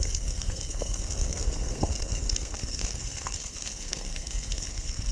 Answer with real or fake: fake